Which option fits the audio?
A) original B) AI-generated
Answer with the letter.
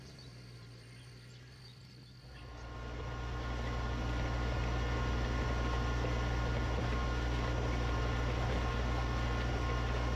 A